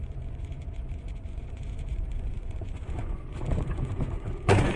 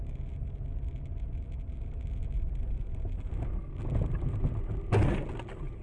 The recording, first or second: second